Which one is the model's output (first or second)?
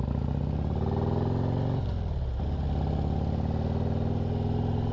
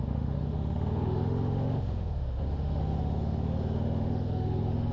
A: second